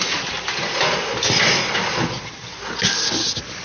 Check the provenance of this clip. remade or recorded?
recorded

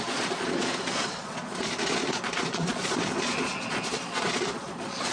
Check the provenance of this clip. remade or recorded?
remade